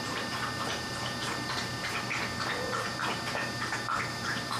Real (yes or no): no